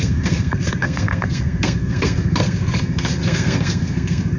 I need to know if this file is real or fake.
fake